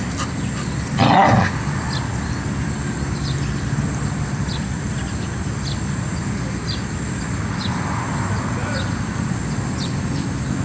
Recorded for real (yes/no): yes